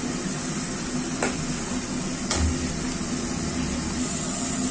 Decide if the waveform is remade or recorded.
recorded